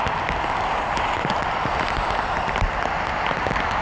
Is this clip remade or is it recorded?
recorded